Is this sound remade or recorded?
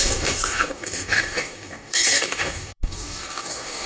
remade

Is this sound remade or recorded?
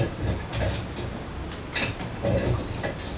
recorded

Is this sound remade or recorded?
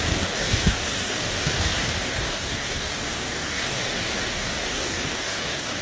remade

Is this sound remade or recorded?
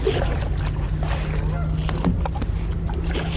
recorded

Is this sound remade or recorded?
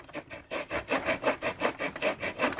recorded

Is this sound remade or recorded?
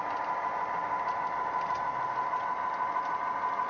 recorded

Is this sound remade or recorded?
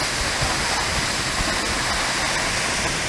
recorded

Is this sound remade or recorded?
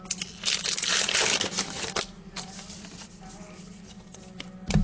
recorded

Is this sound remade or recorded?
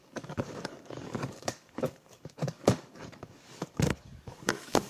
remade